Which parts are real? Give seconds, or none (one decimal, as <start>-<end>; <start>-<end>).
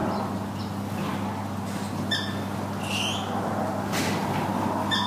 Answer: 0.0-5.1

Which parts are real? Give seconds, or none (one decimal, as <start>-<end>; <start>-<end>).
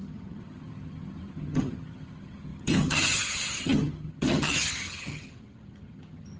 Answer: none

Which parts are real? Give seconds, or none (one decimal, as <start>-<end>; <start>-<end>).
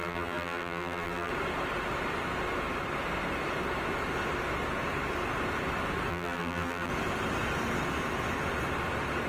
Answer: 1.3-6.1; 6.9-9.3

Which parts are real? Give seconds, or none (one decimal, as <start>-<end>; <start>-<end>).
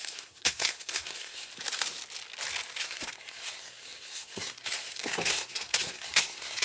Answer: 1.5-2.8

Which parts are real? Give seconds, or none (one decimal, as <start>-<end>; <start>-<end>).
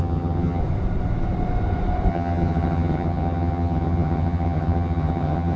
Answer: 0.6-2.1